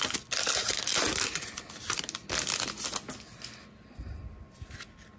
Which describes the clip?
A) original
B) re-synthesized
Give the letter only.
A